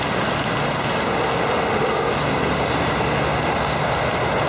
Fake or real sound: real